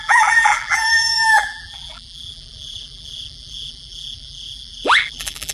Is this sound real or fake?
fake